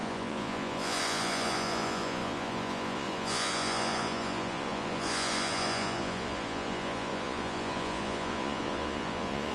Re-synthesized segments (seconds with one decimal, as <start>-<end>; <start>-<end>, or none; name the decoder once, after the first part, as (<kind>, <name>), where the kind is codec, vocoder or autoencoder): 0.0-9.5 (vocoder, Vocos)